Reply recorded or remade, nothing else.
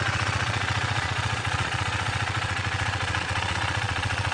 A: remade